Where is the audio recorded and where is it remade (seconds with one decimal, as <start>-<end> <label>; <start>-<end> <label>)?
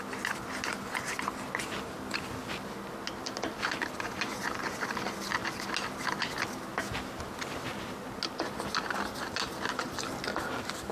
0.0-10.9 recorded